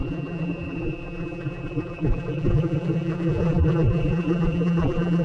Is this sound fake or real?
fake